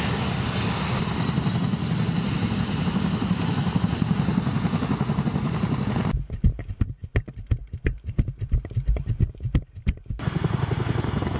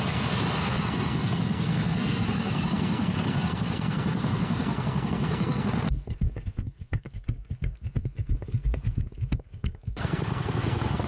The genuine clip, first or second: first